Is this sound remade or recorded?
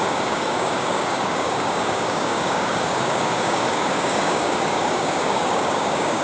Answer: remade